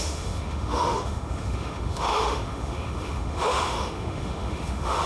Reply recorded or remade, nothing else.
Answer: remade